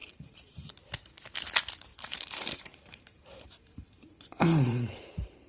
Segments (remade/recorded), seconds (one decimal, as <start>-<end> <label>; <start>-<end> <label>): 0.0-0.7 remade; 0.7-1.9 recorded; 1.9-5.5 remade